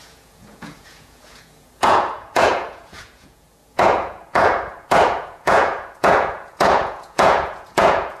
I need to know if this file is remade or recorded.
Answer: remade